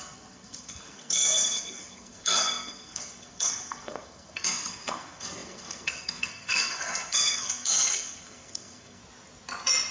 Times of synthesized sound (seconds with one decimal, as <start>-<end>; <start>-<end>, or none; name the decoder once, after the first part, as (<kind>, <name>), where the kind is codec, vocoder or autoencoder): 0.0-9.0 (codec, SNAC)